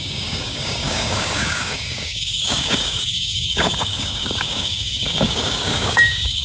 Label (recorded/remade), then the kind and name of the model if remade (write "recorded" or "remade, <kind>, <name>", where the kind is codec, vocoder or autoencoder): remade, codec, DAC